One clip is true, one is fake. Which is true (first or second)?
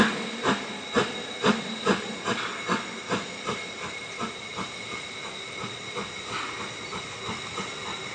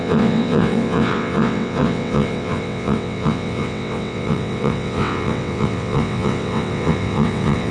first